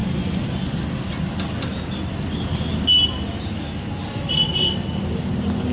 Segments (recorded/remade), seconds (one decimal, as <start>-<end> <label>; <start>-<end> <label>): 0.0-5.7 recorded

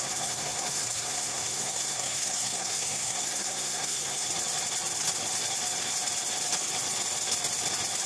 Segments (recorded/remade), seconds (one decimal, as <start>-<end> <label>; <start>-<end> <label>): 0.0-4.3 remade; 4.3-8.1 recorded

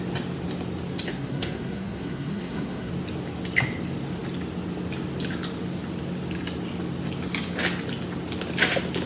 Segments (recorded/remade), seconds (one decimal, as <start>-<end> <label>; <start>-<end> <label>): 0.0-1.1 recorded; 1.1-2.9 remade; 2.9-9.1 recorded

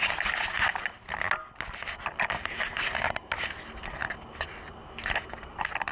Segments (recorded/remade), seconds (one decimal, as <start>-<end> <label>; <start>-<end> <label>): 0.0-5.9 recorded

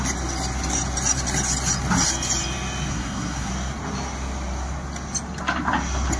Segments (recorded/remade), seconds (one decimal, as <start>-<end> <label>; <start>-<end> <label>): 0.0-2.9 recorded; 2.9-3.5 remade; 3.5-6.2 recorded

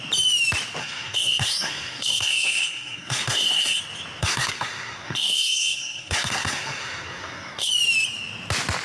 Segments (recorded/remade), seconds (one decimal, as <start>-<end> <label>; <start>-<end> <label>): 0.0-0.8 recorded; 0.8-3.8 remade; 3.8-4.2 recorded; 4.2-7.7 remade; 7.7-8.8 recorded

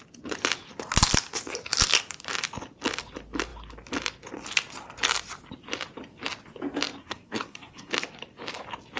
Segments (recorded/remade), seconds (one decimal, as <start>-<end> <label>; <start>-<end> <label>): 0.0-7.0 recorded; 7.0-7.9 remade; 7.9-9.0 recorded